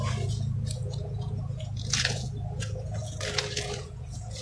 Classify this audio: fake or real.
fake